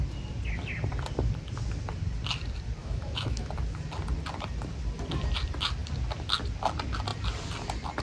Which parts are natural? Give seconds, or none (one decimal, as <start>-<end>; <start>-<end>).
0.0-2.8; 3.5-8.0